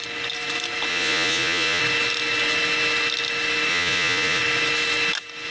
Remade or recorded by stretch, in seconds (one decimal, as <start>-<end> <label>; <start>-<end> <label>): 0.0-0.9 recorded; 0.9-1.8 remade; 1.8-3.7 recorded; 3.7-4.4 remade; 4.4-5.5 recorded